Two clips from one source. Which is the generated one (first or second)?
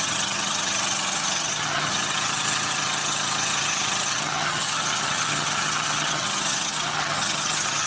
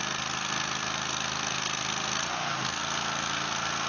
first